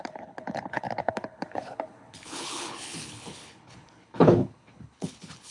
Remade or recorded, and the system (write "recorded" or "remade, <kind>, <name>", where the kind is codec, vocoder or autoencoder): remade, codec, HILCodec